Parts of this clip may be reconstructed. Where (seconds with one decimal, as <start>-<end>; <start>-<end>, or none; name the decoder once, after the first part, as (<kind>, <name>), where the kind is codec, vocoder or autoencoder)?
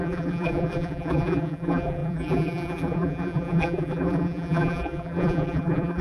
0.0-6.0 (vocoder, BigVGAN v2)